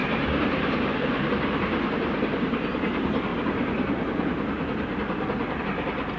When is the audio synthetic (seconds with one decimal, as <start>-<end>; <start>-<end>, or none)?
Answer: 0.0-1.3